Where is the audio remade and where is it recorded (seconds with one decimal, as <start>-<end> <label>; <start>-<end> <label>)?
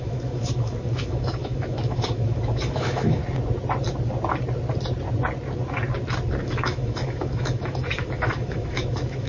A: 0.0-3.2 remade; 3.2-6.4 recorded; 6.4-9.3 remade